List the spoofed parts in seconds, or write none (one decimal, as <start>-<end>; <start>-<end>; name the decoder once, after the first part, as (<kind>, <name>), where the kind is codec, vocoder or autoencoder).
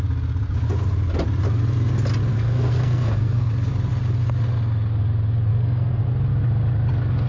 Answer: 2.3-3.5 (codec, SNAC); 5.5-6.0